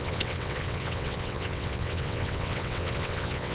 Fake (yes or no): yes